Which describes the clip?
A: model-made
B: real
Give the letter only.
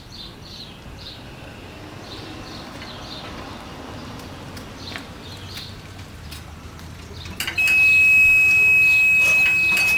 B